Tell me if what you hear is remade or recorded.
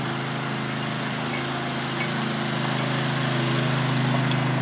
recorded